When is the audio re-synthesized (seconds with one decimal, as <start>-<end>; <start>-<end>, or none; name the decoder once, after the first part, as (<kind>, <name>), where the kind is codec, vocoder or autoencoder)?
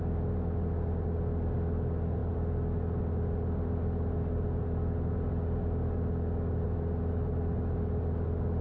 none